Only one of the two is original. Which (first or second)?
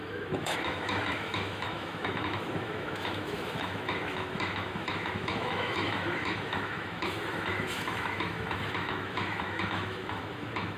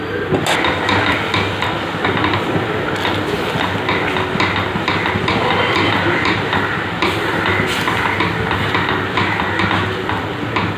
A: second